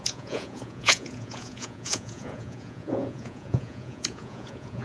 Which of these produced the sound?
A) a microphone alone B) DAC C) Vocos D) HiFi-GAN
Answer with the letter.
C